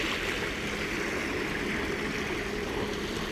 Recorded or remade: recorded